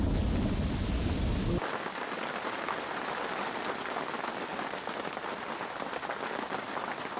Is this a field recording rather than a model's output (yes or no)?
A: yes